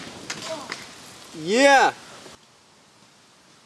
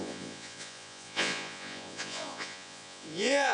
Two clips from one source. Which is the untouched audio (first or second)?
first